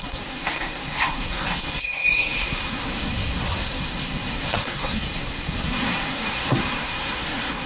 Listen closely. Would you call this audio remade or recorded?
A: remade